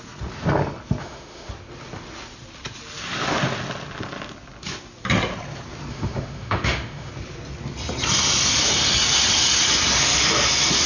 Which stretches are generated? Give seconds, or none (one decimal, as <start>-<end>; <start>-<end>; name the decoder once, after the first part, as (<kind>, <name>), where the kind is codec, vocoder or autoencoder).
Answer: 1.0-1.5 (autoencoder, DAC-VAE); 5.9-7.1